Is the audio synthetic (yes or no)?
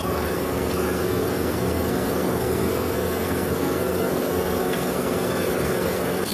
yes